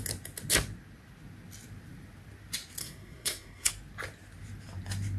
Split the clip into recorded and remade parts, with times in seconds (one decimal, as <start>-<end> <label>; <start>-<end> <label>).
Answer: 0.0-2.8 recorded; 2.8-3.7 remade; 3.7-5.2 recorded